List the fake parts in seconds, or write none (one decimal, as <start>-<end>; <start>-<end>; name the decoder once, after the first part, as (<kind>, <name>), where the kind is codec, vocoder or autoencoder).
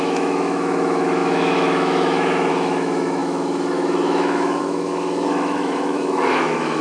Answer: 0.0-6.8 (autoencoder, DAC-VAE)